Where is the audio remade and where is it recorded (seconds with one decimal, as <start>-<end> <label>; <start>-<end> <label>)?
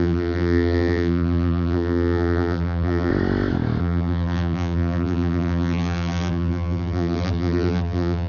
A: 0.0-3.1 remade; 3.1-3.8 recorded; 3.8-8.3 remade